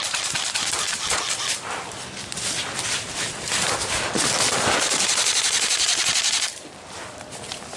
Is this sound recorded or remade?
recorded